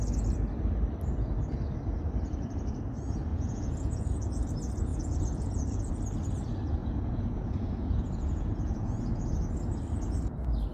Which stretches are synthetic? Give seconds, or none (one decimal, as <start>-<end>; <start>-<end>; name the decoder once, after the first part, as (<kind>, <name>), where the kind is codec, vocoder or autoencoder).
3.3-4.5 (vocoder, Vocos); 4.9-5.9; 6.8-9.0